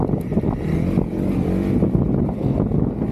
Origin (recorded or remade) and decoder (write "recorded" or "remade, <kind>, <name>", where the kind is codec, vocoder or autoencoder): recorded